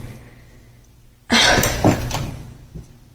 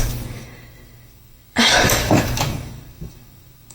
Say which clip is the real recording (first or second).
first